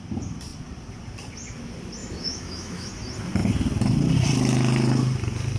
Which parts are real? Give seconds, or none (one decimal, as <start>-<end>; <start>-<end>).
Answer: 0.0-2.0; 2.9-5.6